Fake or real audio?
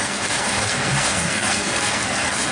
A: fake